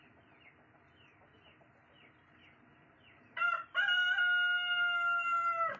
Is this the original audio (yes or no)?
yes